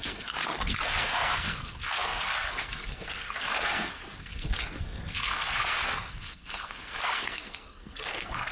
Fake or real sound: fake